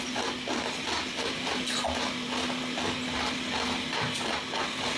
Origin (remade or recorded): recorded